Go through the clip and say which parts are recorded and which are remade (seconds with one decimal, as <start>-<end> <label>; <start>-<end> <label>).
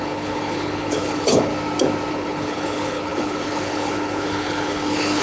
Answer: 0.0-1.5 remade; 1.5-2.1 recorded; 2.1-5.2 remade